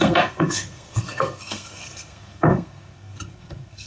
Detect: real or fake fake